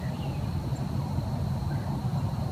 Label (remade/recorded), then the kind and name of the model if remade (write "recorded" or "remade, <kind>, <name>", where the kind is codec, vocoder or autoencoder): recorded